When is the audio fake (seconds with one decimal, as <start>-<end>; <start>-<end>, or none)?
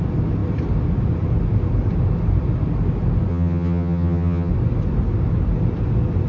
3.3-4.5